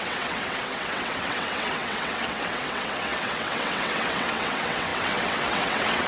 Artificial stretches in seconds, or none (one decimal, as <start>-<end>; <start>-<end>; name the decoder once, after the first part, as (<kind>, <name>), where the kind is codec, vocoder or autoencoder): 0.0-6.1 (vocoder, WaveNeXt)